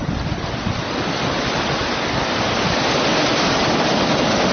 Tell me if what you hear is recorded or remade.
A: recorded